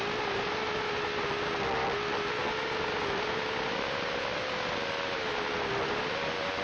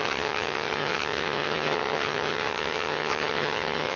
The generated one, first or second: second